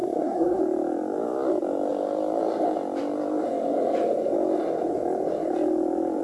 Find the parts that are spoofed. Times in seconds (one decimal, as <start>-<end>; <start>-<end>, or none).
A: 0.0-0.6